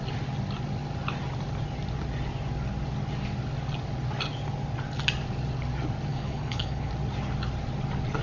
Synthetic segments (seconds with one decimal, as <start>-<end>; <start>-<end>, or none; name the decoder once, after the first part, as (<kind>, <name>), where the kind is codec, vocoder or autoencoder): 6.1-6.9 (codec, HILCodec)